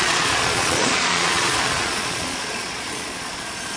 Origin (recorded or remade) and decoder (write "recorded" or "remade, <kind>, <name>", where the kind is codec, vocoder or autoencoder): remade, vocoder, Vocos